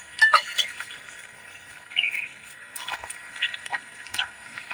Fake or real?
fake